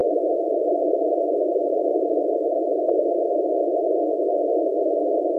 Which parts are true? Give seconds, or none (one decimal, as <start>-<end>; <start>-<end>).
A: 3.2-5.4

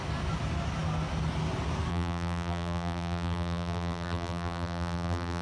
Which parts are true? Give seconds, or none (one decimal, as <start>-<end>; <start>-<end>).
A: 0.0-1.9

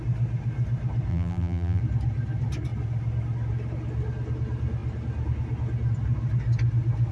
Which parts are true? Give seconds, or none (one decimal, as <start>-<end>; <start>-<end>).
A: 0.0-1.1; 1.8-7.1

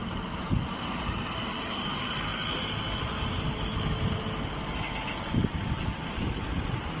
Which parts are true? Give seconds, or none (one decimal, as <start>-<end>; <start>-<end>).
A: 0.0-7.0